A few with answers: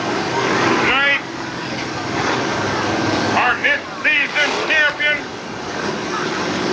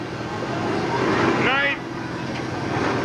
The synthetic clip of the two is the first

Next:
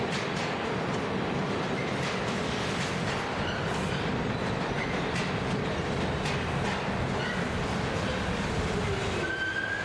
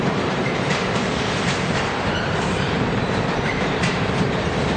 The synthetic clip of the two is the second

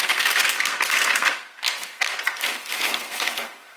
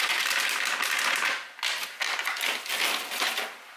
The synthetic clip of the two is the first